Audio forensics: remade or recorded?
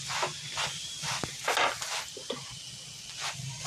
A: recorded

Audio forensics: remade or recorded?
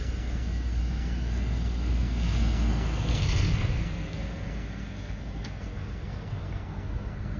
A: remade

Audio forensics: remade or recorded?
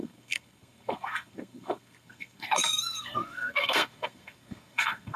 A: remade